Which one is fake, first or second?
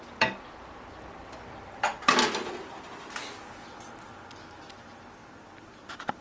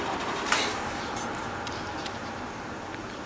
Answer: second